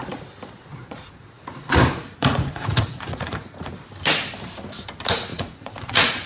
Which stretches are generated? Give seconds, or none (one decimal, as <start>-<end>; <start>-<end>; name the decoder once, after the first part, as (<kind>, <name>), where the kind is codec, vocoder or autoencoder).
0.7-3.7 (vocoder, Vocos); 5.3-6.3